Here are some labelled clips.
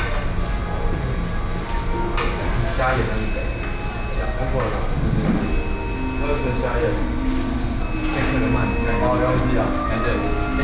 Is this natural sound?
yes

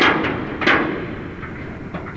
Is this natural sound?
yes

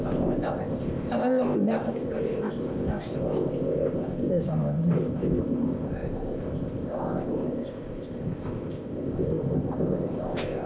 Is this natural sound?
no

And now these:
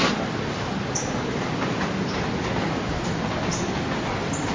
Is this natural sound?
yes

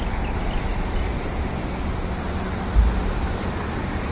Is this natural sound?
yes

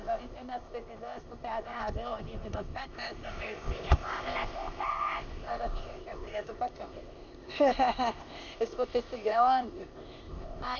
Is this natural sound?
no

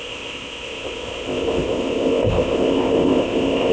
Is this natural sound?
no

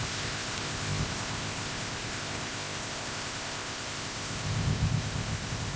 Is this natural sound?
no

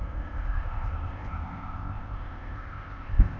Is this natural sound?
no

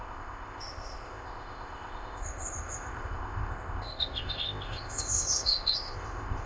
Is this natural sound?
no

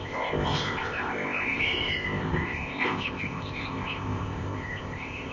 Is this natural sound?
no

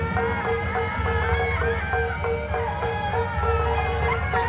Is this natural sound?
yes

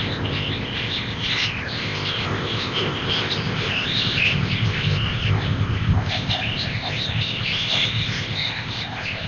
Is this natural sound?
no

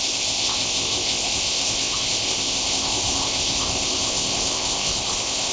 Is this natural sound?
no